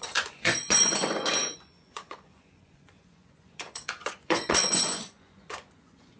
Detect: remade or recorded remade